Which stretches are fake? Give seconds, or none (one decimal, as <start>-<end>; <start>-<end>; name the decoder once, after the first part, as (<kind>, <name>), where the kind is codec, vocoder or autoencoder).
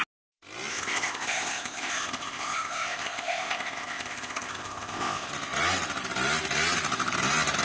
0.7-5.3 (codec, ZipCodec)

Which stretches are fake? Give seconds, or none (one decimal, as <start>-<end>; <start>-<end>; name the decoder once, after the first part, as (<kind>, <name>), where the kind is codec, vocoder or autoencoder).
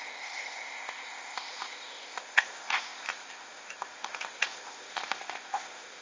0.0-6.0 (codec, ZipCodec)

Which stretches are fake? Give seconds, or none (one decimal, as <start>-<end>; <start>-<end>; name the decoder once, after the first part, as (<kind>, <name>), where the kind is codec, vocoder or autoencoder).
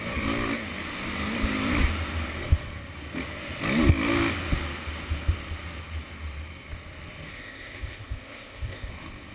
7.3-8.9 (codec, ZipCodec)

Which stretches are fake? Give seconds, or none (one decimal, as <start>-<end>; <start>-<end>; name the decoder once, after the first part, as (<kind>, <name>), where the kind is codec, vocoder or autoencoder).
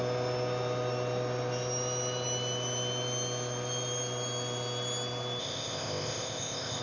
5.4-6.8 (codec, ZipCodec)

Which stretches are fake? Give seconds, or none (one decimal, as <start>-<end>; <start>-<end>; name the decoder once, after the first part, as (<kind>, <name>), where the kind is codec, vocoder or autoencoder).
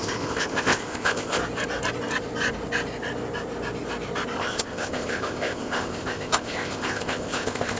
0.0-1.4 (codec, ZipCodec); 4.4-7.8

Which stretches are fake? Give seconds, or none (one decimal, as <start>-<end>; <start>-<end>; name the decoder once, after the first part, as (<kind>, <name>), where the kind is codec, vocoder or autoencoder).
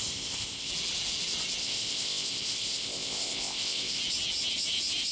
0.0-0.7 (codec, ZipCodec); 1.6-4.0